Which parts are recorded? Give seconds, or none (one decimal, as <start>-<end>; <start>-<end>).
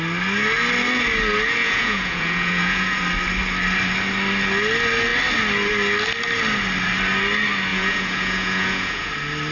0.0-1.6; 3.0-7.7; 9.1-9.5